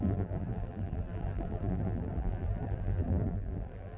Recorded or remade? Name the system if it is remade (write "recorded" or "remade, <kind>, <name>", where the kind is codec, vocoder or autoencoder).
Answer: remade, vocoder, BigVGAN v2